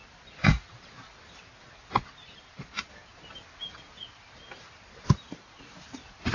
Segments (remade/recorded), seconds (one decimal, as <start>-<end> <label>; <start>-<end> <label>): 0.0-6.3 recorded